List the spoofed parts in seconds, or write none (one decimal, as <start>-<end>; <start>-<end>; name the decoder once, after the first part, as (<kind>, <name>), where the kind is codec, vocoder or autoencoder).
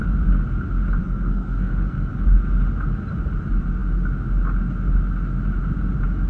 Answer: 1.0-2.1 (codec, SNAC)